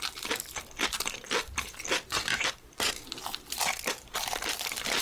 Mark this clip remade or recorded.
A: recorded